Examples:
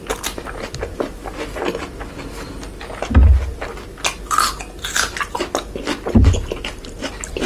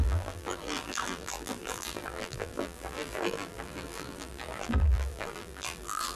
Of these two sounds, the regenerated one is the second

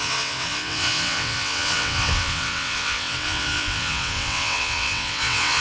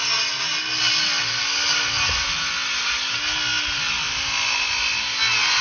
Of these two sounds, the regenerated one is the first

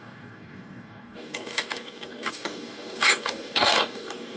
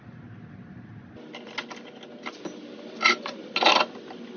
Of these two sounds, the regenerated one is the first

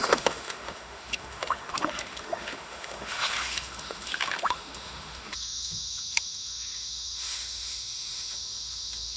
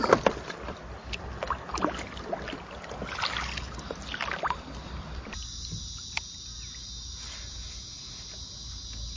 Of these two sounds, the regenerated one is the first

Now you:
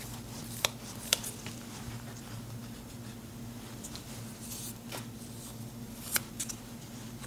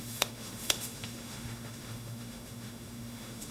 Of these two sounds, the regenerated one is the second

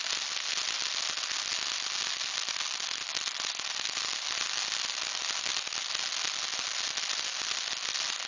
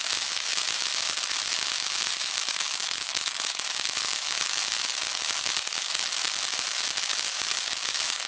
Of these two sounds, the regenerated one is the second